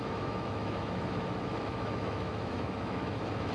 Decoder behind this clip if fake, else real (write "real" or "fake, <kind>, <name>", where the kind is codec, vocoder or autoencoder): fake, autoencoder, DAC-VAE